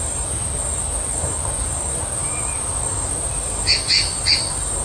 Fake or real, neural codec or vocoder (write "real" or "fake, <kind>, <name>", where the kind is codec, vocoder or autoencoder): real